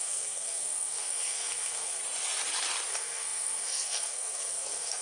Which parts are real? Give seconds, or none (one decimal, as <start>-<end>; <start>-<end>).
2.0-2.9